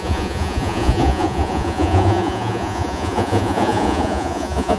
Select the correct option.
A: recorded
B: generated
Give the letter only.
B